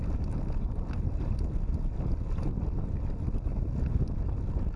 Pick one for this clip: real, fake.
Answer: real